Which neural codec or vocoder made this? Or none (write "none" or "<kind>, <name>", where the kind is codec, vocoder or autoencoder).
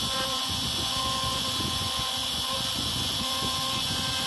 vocoder, Vocos